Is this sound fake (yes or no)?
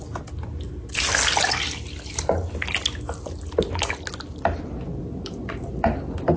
no